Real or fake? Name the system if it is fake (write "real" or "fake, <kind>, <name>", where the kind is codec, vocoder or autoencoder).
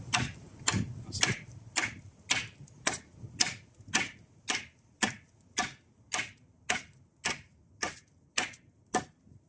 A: real